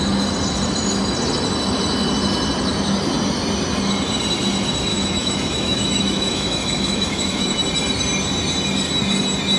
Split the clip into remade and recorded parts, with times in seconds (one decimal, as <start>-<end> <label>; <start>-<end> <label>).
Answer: 0.0-4.9 recorded; 4.9-7.6 remade; 7.6-9.6 recorded